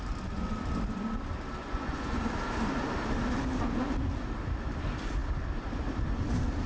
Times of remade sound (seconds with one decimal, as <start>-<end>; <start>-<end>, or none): 1.6-2.2